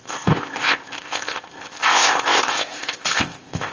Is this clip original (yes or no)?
no